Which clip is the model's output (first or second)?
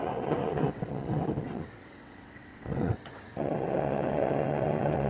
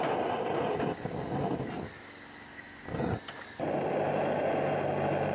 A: first